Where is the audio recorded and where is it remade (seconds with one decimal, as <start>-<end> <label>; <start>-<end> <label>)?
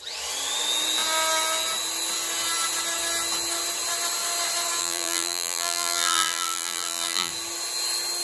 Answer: 0.0-4.8 recorded; 4.8-7.3 remade; 7.3-8.2 recorded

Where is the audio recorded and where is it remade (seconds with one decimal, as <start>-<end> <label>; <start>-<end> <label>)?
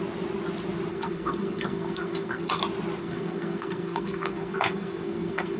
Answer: 0.0-0.9 recorded; 0.9-2.6 remade; 2.6-3.0 recorded; 3.0-5.6 remade